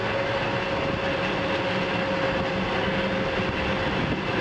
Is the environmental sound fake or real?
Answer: real